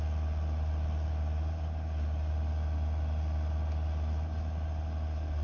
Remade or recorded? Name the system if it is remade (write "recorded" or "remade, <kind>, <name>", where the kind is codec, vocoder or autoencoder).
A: recorded